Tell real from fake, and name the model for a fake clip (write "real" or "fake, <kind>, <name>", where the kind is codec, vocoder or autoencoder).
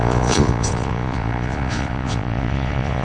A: fake, vocoder, Vocos